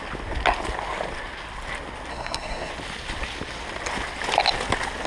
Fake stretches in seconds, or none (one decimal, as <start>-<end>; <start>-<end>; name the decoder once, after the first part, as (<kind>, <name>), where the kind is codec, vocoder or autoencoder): 2.1-2.7 (codec, SNAC)